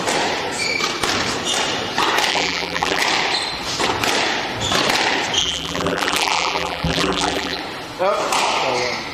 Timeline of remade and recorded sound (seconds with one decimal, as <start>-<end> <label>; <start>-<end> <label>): 0.0-2.3 recorded; 2.3-3.0 remade; 3.0-5.4 recorded; 5.4-7.6 remade; 7.6-9.1 recorded